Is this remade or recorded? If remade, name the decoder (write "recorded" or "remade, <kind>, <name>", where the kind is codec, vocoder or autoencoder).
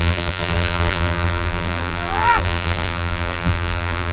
remade, vocoder, BigVGAN v2